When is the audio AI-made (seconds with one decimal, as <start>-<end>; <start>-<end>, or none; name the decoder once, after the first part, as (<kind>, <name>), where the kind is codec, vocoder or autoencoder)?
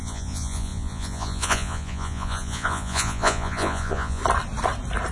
0.0-4.2 (vocoder, Vocos)